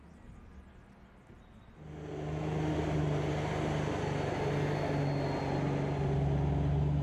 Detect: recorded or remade recorded